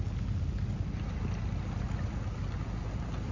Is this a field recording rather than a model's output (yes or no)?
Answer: yes